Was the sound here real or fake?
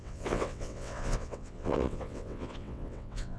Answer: fake